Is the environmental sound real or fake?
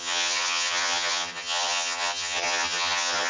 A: fake